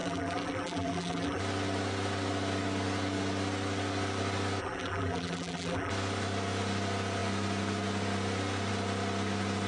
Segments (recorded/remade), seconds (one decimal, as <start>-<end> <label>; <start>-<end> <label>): 0.0-1.4 remade; 1.4-4.6 recorded; 4.6-5.9 remade; 5.9-9.7 recorded